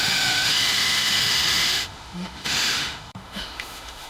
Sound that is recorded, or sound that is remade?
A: remade